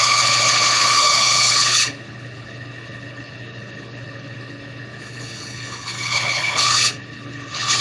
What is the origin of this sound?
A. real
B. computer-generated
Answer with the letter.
B